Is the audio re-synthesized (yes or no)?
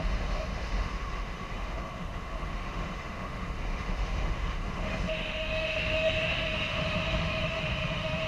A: yes